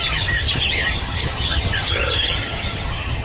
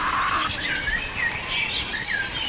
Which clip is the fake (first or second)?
first